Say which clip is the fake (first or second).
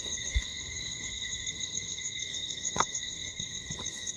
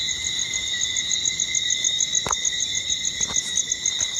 first